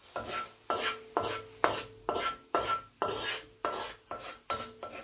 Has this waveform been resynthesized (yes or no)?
no